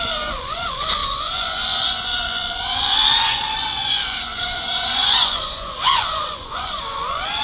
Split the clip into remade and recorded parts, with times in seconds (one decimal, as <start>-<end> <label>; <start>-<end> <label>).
0.0-7.4 remade